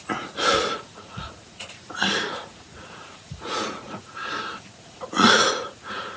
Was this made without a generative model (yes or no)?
no